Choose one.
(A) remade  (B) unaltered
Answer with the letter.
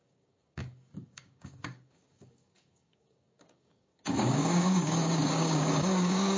A